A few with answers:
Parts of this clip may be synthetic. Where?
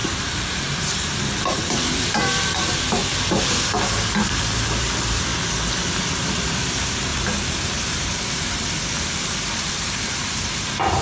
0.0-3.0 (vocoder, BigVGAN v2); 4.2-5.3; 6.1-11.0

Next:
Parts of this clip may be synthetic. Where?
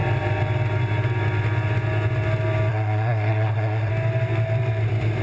2.7-3.9 (codec, SNAC)